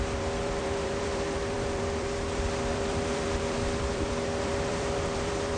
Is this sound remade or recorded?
remade